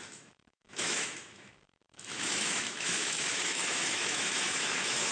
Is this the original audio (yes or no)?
no